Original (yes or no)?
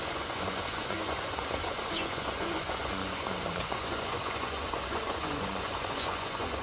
no